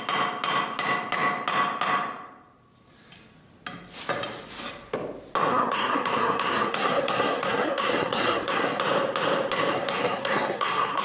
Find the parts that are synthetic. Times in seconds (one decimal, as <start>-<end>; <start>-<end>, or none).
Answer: 5.5-8.8; 9.7-11.0